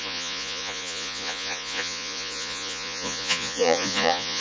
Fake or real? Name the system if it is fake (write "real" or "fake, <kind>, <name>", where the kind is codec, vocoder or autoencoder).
fake, vocoder, Vocos